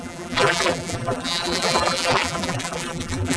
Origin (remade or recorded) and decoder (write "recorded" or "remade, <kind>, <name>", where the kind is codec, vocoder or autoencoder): remade, vocoder, BigVGAN v2